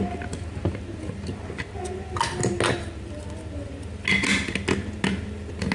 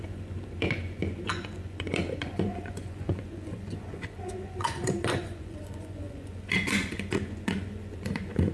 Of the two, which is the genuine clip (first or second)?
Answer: first